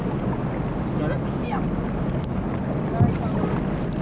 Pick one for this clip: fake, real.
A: real